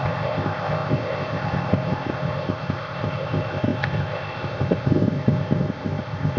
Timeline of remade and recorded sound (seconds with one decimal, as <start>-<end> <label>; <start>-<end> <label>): 0.0-6.4 remade